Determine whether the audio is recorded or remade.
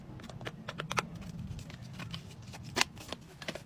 recorded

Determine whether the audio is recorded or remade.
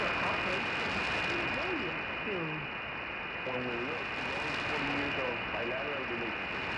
recorded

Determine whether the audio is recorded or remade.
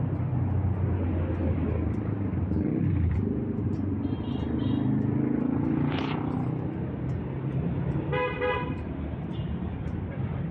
recorded